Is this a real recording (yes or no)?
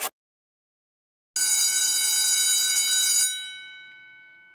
yes